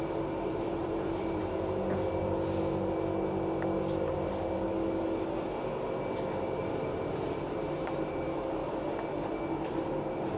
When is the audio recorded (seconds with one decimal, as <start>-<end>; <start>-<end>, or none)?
1.4-6.4; 8.6-9.7